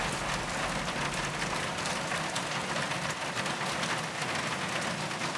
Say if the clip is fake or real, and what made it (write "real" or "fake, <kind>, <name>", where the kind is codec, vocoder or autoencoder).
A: real